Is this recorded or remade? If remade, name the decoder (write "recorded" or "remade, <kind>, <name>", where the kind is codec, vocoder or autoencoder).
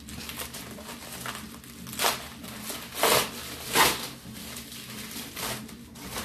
recorded